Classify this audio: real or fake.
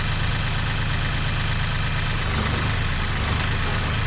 real